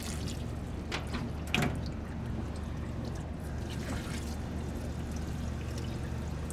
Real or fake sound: real